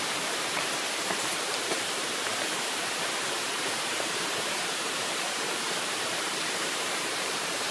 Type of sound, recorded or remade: remade